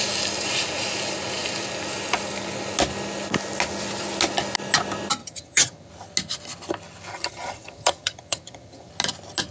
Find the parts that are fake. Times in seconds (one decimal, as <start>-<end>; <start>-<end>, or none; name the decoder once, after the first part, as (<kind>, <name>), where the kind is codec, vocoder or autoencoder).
5.2-5.9 (vocoder, HiFi-GAN); 7.1-8.9